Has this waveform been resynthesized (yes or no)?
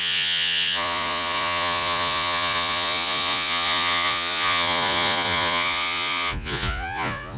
yes